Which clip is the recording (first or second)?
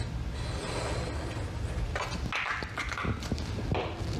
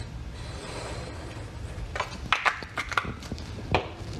first